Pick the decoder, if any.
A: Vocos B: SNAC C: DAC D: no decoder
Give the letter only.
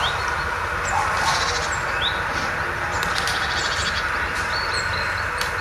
D